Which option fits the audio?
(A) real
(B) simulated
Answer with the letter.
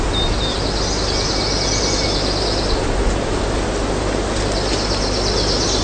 A